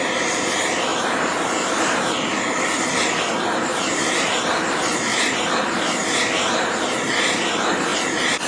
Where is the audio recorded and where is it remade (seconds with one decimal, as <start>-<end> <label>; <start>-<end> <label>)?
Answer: 0.0-0.9 recorded; 0.9-2.1 remade; 2.1-5.1 recorded; 5.1-6.9 remade; 6.9-8.5 recorded